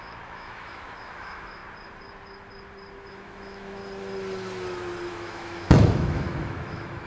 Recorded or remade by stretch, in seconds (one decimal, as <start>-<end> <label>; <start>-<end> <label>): 0.0-1.6 remade; 1.6-3.1 recorded; 3.1-3.8 remade; 3.8-5.1 recorded; 5.1-7.1 remade